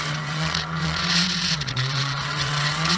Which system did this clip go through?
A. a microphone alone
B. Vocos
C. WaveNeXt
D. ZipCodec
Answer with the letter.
C